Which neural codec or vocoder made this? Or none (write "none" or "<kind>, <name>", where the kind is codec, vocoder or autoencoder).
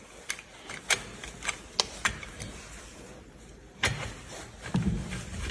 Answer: none